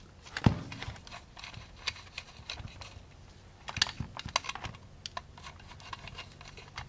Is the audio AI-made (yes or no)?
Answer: no